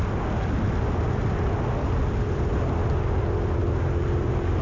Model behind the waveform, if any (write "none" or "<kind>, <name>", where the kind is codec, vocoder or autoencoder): none